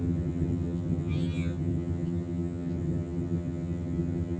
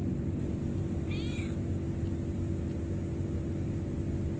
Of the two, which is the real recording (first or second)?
second